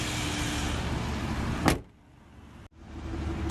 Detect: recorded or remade recorded